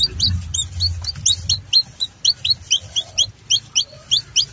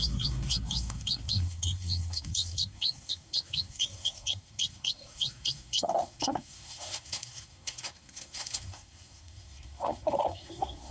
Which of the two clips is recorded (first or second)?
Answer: first